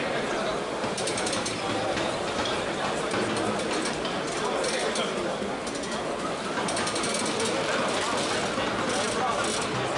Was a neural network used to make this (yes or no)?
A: no